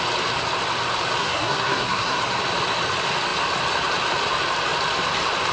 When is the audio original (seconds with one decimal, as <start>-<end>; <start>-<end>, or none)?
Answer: 0.0-1.2; 2.2-5.5